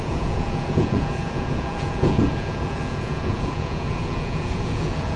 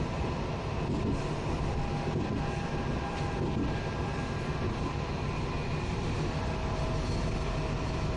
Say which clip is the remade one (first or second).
first